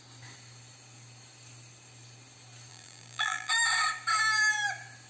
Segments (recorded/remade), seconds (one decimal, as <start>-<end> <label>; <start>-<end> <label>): 0.0-2.7 recorded; 2.7-3.5 remade; 3.5-5.1 recorded